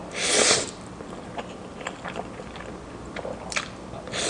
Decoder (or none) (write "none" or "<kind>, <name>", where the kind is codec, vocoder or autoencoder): vocoder, BigVGAN v2